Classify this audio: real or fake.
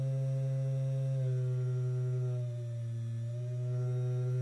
real